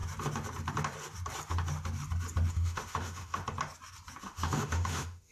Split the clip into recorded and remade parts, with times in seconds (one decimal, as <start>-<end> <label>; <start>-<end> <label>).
0.0-2.5 recorded; 2.5-3.4 remade; 3.4-4.2 recorded; 4.2-5.3 remade